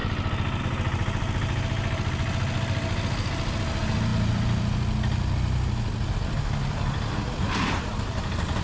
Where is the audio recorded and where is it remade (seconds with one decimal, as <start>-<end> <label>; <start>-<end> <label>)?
0.0-8.6 recorded